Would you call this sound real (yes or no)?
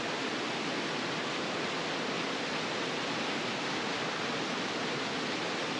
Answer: yes